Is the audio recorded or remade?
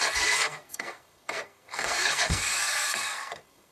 remade